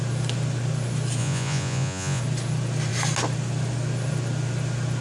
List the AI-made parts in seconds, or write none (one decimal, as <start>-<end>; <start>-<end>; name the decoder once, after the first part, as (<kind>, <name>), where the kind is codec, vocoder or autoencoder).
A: 1.2-2.2 (vocoder, Vocos)